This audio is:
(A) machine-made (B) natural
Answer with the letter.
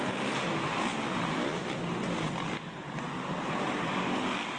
B